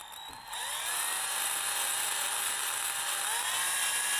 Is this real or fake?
real